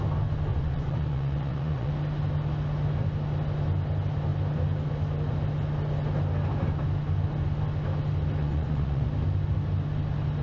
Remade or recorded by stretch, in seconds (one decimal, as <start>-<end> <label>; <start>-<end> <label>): 0.0-0.5 recorded; 0.5-1.9 remade; 1.9-8.4 recorded; 8.4-9.1 remade; 9.1-10.4 recorded